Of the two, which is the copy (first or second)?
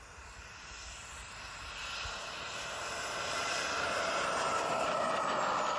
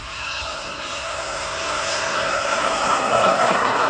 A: second